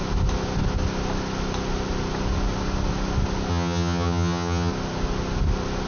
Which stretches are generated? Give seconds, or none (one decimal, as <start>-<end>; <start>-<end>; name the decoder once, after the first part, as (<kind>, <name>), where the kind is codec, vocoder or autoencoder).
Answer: 3.5-4.7 (vocoder, HiFi-GAN)